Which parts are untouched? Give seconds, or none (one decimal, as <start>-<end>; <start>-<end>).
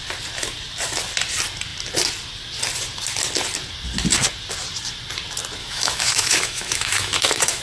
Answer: 0.0-5.6